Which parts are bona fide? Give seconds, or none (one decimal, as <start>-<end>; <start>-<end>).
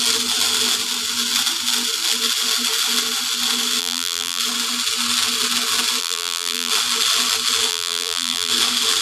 0.0-3.8; 4.4-6.0; 6.7-7.7; 8.5-9.0